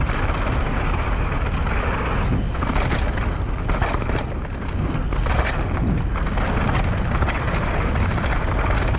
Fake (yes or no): no